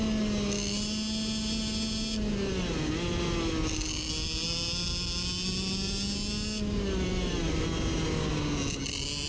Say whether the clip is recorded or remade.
recorded